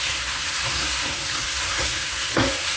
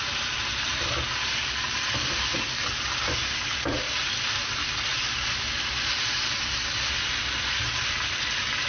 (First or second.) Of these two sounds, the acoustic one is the second